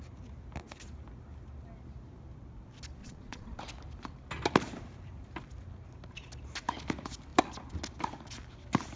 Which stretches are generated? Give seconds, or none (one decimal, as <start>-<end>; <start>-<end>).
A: 3.0-3.6